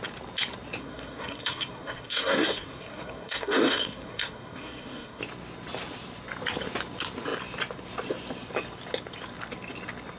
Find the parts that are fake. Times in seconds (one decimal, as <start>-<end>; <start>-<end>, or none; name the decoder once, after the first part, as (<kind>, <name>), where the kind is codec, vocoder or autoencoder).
0.8-5.2 (codec, SNAC)

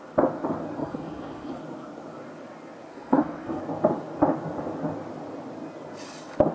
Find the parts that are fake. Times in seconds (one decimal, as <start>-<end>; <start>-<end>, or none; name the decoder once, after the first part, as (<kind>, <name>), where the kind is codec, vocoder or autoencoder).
0.8-1.6 (codec, SNAC); 2.9-3.6